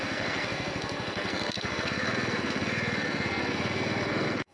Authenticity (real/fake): fake